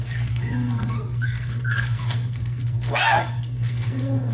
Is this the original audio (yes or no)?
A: no